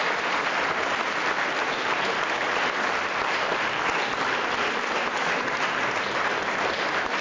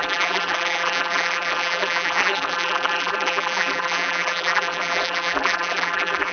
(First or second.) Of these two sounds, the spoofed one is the second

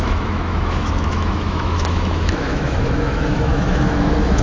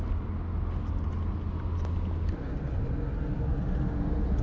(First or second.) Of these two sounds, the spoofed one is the first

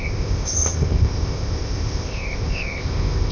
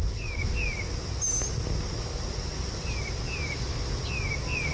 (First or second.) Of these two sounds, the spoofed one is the first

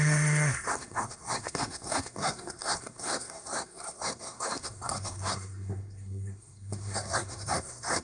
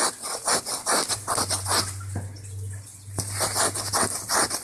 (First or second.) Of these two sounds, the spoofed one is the first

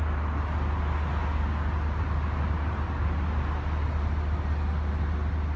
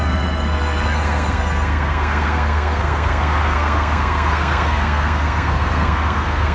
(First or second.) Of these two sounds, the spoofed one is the second